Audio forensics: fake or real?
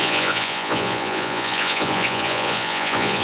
fake